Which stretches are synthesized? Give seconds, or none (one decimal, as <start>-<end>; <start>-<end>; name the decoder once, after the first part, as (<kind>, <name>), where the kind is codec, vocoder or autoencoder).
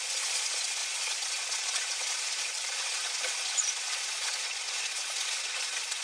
0.0-6.0 (vocoder, Vocos)